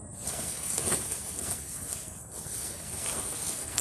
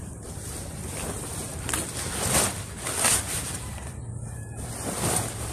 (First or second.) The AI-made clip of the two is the first